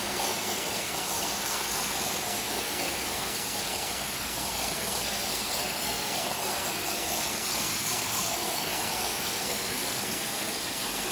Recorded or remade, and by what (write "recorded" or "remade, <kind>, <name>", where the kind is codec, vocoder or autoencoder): remade, codec, SNAC